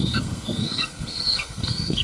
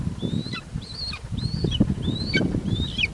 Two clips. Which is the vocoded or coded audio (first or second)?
first